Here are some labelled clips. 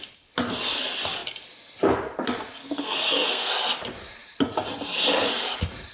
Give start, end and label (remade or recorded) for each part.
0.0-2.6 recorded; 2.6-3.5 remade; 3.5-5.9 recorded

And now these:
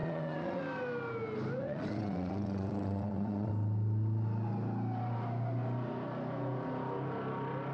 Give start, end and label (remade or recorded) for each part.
0.0-0.6 remade; 0.6-1.6 recorded; 1.6-3.5 remade; 3.5-7.7 recorded

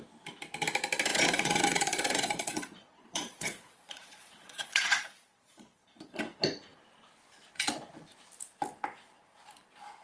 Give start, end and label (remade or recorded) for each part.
0.0-1.1 recorded; 1.1-6.2 remade; 6.2-10.0 recorded

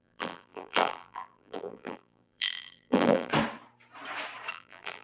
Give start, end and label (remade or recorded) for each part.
0.0-3.3 remade; 3.3-4.5 recorded; 4.5-5.0 remade

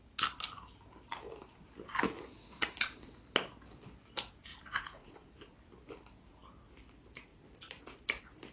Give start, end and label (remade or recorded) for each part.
0.0-4.5 recorded; 4.5-5.4 remade; 5.4-8.5 recorded